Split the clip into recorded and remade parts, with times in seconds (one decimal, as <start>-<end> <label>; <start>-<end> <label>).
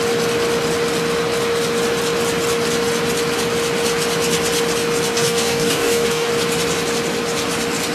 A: 0.0-5.1 recorded; 5.1-6.3 remade; 6.3-7.9 recorded